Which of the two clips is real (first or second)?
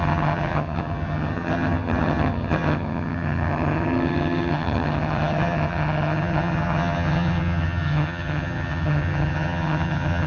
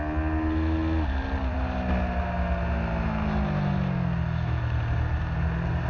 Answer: second